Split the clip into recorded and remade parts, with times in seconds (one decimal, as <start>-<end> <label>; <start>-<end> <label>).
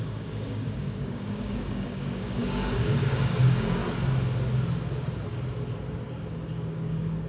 0.0-3.8 remade; 3.8-6.7 recorded; 6.7-7.3 remade